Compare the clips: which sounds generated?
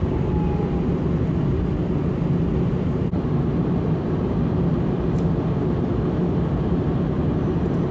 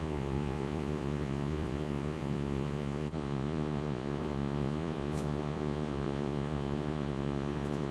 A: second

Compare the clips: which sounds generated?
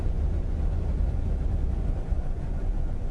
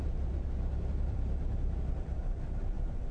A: first